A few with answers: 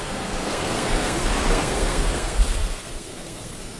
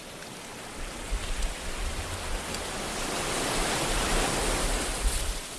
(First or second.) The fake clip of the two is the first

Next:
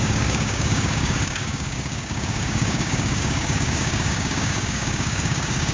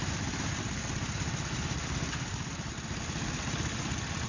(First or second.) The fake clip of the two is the first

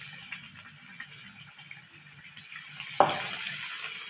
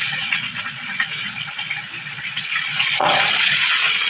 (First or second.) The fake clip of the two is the second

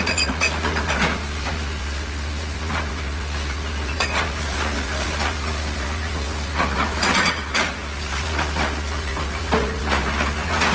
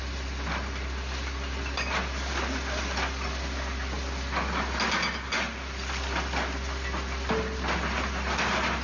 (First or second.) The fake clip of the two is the first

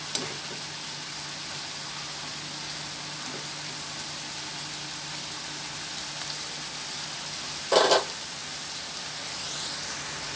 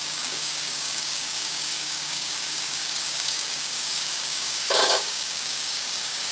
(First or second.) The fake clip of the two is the second